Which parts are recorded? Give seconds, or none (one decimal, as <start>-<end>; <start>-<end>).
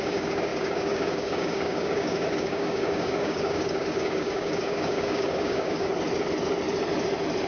5.9-7.5